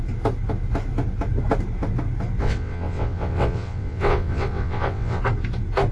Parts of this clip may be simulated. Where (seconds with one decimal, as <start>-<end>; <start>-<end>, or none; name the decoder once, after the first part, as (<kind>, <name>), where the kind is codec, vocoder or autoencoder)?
2.4-5.2 (vocoder, WaveNeXt)

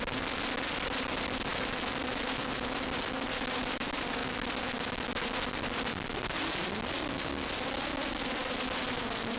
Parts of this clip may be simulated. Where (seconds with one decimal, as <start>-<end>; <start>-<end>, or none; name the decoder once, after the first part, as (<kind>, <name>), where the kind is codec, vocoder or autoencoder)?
none

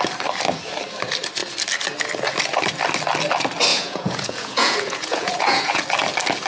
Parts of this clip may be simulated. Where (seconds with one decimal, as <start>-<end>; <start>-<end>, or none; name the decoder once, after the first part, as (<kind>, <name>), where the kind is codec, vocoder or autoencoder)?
3.7-5.8 (vocoder, Vocos)